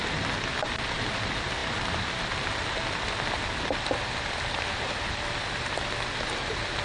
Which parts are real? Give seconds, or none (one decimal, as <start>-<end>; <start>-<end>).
0.0-6.8